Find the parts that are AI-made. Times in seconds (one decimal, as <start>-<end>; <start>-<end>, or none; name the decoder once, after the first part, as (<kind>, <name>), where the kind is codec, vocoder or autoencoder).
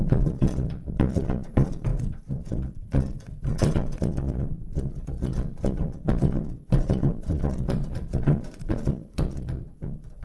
0.0-10.2 (vocoder, Vocos)